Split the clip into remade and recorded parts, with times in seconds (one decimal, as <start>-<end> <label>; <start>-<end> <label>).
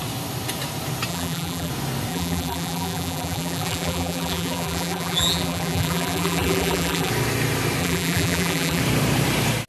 0.0-1.1 recorded; 1.1-1.7 remade; 1.7-2.1 recorded; 2.1-7.1 remade; 7.1-7.8 recorded; 7.8-8.8 remade; 8.8-9.7 recorded